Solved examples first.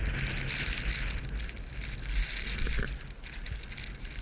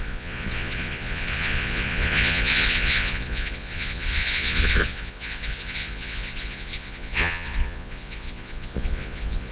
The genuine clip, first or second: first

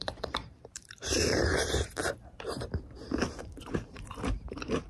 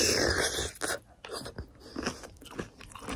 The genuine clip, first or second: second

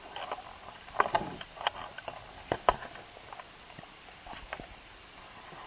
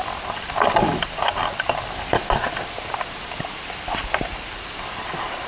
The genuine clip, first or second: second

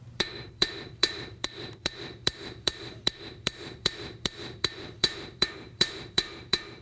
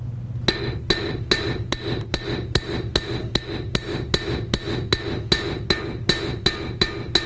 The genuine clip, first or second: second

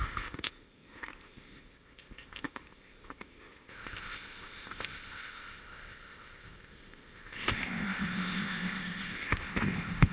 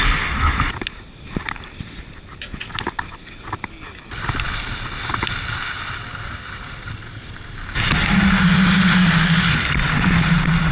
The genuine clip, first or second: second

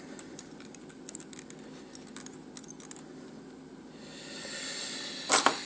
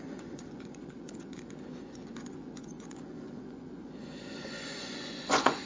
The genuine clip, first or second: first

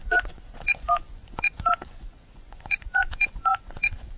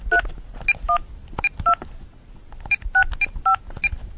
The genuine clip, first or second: second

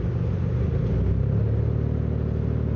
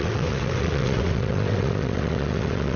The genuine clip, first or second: first